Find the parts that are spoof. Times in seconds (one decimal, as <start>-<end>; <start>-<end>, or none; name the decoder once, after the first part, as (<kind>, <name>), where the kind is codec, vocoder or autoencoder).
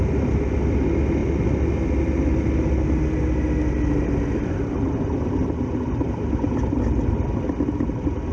none